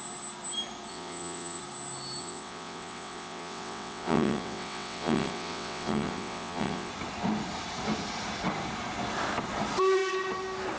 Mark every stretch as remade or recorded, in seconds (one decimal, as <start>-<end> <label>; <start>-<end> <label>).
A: 0.0-0.9 recorded; 0.9-1.6 remade; 1.6-2.2 recorded; 2.2-6.9 remade; 6.9-10.8 recorded